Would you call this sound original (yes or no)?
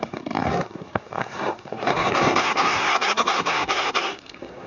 no